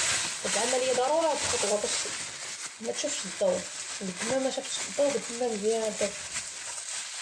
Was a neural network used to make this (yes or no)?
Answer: no